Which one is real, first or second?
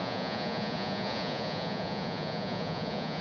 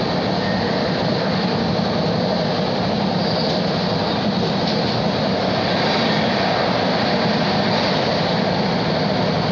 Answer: second